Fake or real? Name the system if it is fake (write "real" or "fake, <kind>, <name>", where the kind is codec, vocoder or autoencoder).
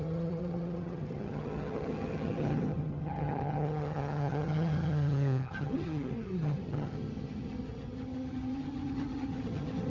fake, vocoder, HiFi-GAN